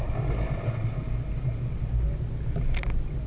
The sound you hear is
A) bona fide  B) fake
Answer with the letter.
A